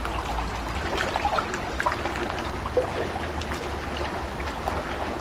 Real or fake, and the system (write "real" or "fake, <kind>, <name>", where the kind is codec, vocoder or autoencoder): real